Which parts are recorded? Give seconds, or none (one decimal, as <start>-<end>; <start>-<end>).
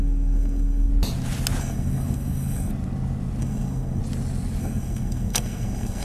0.9-1.6; 2.7-3.4; 4.0-4.6